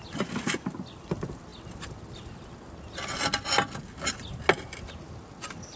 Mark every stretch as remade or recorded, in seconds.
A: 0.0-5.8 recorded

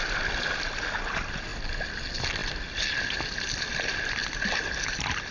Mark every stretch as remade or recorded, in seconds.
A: 0.0-5.3 recorded

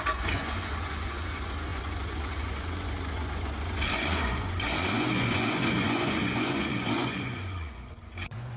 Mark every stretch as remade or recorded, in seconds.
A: 0.0-8.6 remade

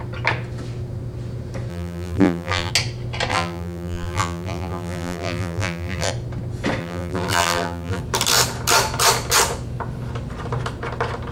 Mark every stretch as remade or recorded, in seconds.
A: 0.0-1.7 recorded; 1.7-2.7 remade; 2.7-3.3 recorded; 3.3-6.1 remade; 6.1-6.8 recorded; 6.8-8.0 remade; 8.0-11.3 recorded